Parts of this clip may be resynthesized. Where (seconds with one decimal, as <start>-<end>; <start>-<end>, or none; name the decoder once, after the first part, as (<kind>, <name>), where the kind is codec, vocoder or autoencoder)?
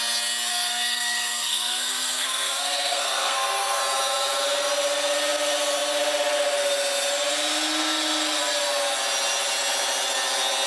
0.5-3.8 (codec, SNAC)